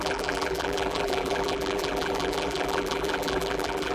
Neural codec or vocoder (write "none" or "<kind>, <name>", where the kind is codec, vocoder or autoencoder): vocoder, BigVGAN v2